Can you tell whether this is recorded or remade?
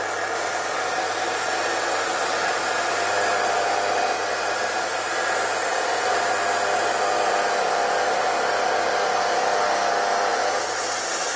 recorded